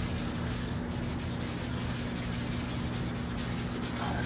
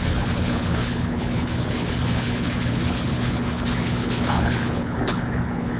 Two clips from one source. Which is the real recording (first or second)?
first